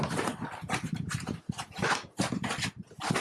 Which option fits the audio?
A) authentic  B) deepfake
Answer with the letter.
A